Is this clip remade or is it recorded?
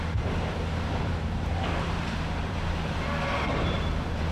remade